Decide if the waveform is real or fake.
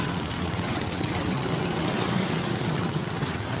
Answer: fake